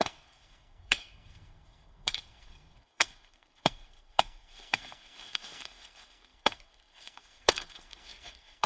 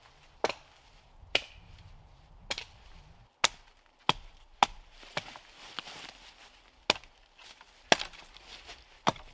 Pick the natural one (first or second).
second